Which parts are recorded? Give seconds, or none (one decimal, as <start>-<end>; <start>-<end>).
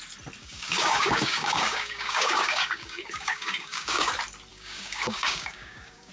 0.0-0.4; 4.1-4.5